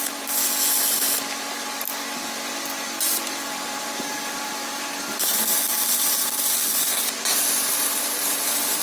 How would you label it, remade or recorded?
remade